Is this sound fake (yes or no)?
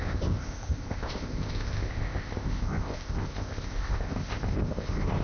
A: yes